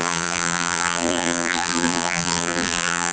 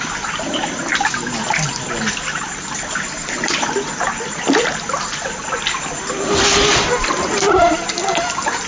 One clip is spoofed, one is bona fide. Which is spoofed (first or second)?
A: first